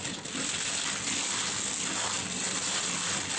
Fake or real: real